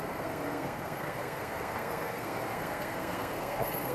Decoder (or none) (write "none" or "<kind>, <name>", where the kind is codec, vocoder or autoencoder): codec, SNAC